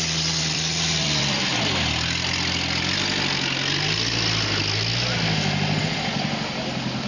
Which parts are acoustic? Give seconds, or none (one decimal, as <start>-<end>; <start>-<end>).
1.5-5.8